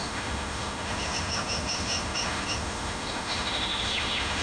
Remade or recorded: remade